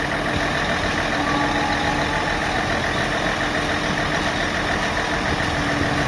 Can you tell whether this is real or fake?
real